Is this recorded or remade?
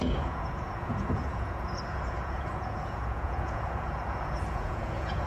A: remade